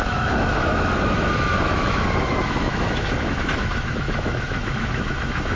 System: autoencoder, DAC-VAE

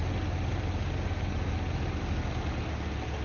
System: none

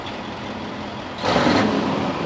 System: none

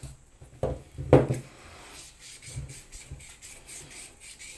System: none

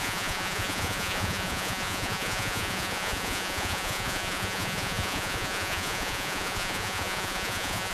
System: vocoder, Vocos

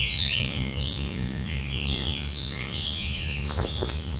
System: vocoder, Vocos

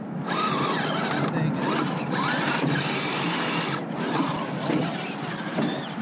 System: none